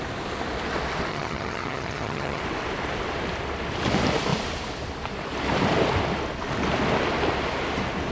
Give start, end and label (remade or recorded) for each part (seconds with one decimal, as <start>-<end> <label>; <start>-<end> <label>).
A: 0.0-1.1 recorded; 1.1-2.4 remade; 2.4-8.1 recorded